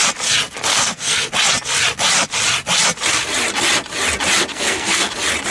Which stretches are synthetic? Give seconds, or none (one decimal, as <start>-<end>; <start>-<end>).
0.7-1.3; 4.5-5.1